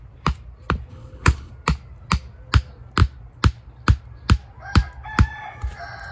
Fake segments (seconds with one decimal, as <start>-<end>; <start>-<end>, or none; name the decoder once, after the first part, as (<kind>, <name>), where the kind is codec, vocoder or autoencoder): 0.9-1.5 (codec, HILCodec)